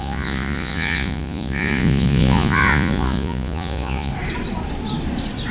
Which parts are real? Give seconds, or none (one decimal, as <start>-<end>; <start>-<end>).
4.1-5.5